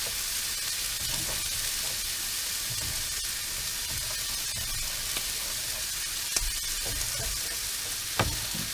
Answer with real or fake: real